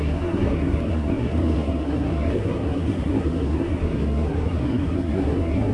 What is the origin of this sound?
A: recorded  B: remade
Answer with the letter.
B